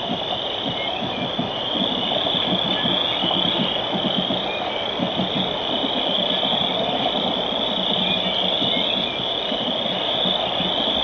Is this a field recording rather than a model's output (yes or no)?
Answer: yes